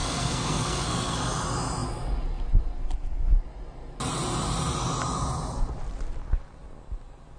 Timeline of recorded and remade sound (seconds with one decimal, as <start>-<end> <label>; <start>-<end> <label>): 0.0-1.2 remade; 1.2-7.4 recorded